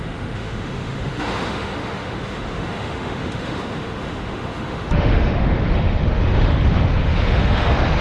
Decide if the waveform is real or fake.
fake